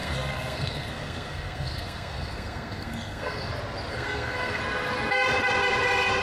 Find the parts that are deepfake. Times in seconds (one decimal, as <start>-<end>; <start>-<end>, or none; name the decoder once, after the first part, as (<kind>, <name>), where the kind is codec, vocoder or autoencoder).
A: 0.0-3.5 (codec, SNAC); 3.9-4.6